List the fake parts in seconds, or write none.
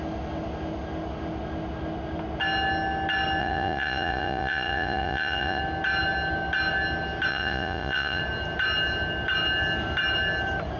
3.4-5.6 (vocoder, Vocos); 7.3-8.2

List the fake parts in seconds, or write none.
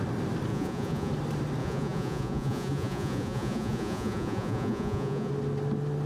0.5-1.1 (vocoder, Vocos); 1.6-5.3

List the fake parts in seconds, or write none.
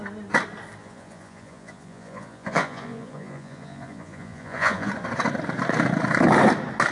0.8-4.9 (vocoder, Vocos)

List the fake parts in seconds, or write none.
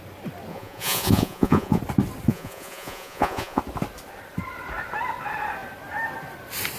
0.5-1.8 (vocoder, Vocos); 2.3-3.6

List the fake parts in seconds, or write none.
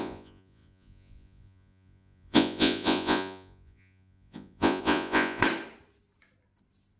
0.0-5.4 (vocoder, Vocos)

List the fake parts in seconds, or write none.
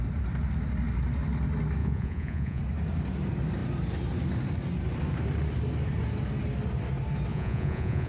1.8-2.6 (vocoder, Vocos); 7.3-8.1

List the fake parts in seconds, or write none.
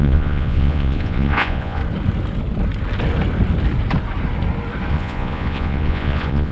0.0-1.8 (vocoder, Vocos); 4.9-6.5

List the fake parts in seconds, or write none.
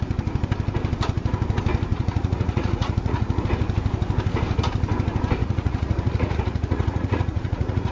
1.9-3.4 (vocoder, Vocos); 5.4-7.9